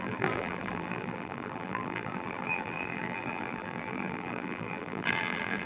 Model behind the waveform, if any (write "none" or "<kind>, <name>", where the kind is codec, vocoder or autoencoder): vocoder, BigVGAN v2